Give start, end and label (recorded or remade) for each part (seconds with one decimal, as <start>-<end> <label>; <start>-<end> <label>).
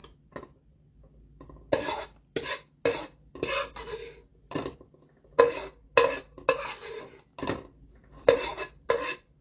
0.0-7.3 recorded; 7.3-8.9 remade; 8.9-9.4 recorded